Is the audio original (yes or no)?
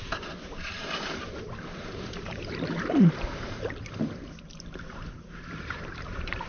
no